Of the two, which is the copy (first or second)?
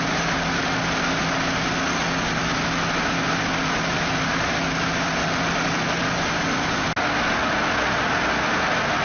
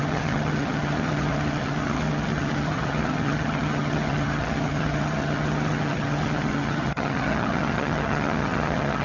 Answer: second